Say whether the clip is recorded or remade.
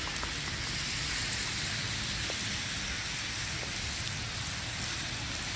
recorded